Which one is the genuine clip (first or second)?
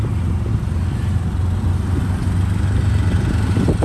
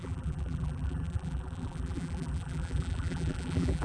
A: first